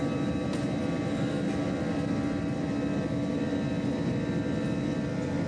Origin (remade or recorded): recorded